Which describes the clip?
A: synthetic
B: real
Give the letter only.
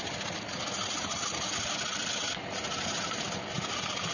B